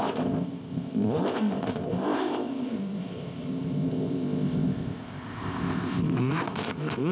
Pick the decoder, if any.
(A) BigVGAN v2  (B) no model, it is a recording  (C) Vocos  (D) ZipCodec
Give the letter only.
D